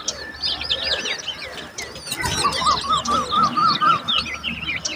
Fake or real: real